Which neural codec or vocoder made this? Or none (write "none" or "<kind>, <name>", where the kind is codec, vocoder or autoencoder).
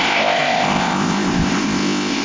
codec, ZipCodec